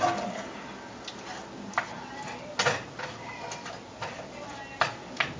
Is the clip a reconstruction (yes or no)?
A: no